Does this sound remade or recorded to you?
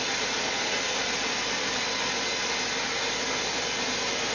recorded